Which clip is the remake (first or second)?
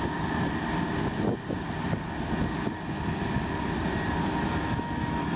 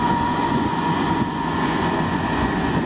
second